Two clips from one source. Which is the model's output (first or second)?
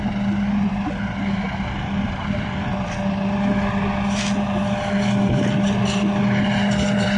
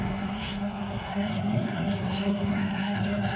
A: second